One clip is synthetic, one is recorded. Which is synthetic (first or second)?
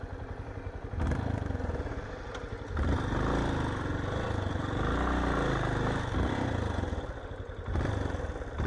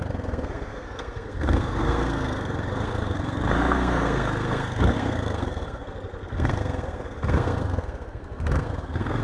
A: second